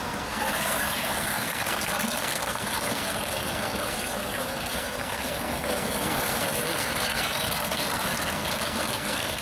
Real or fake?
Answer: fake